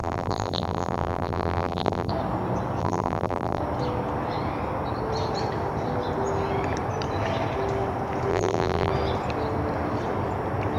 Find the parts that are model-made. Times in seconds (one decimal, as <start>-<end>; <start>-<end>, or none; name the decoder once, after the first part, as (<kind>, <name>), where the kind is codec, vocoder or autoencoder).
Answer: 0.0-2.1 (vocoder, BigVGAN v2); 2.8-3.6; 8.3-8.9